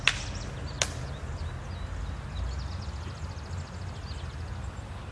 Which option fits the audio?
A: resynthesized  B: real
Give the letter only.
B